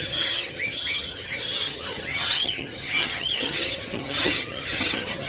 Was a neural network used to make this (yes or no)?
yes